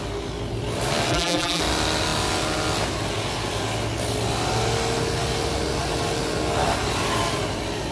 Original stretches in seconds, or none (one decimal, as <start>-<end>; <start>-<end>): 0.0-1.1; 1.6-7.9